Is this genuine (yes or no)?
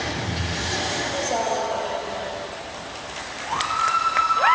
yes